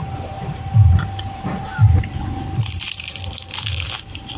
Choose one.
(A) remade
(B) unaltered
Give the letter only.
A